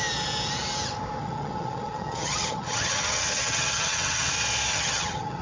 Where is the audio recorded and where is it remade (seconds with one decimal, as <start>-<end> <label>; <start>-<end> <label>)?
0.0-1.2 recorded; 1.2-4.3 remade; 4.3-4.7 recorded; 4.7-5.4 remade